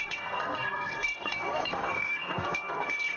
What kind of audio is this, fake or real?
fake